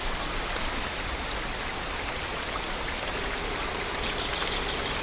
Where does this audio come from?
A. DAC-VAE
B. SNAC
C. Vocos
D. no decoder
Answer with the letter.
D